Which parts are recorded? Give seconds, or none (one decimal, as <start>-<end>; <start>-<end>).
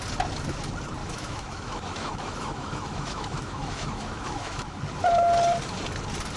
0.0-1.0; 4.8-6.4